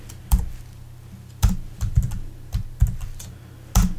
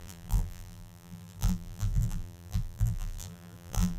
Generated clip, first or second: second